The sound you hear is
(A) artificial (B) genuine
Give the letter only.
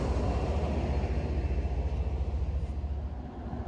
B